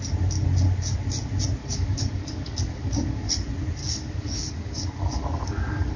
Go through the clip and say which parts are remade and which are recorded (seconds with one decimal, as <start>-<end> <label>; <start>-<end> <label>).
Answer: 0.0-1.6 recorded; 1.6-3.3 remade; 3.3-3.8 recorded; 3.8-6.0 remade